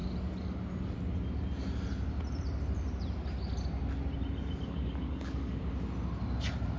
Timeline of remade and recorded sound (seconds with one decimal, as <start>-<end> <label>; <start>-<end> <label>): 0.0-4.6 recorded; 4.6-5.6 remade; 5.6-6.8 recorded